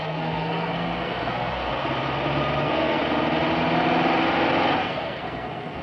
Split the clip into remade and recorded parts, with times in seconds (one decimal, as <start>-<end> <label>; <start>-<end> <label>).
0.0-1.7 remade; 1.7-2.6 recorded; 2.6-3.0 remade; 3.0-4.8 recorded; 4.8-5.8 remade

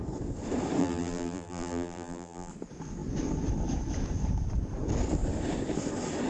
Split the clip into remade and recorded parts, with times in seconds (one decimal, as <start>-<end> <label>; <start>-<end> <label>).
0.0-0.8 recorded; 0.8-2.5 remade; 2.5-6.3 recorded

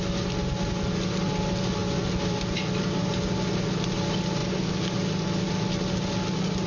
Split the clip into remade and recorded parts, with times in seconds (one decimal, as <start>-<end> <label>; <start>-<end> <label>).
0.0-6.7 recorded

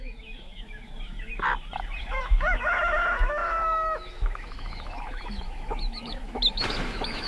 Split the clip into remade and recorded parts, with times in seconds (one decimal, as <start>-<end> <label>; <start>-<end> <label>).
0.0-1.3 remade; 1.3-2.0 recorded; 2.0-7.3 remade